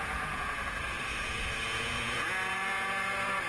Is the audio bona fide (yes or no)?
no